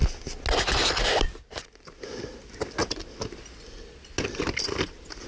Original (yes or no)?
yes